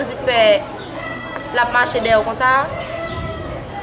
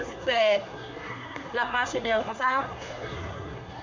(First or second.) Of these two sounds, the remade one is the second